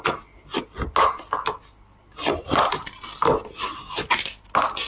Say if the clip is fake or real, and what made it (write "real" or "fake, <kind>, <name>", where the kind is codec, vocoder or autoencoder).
real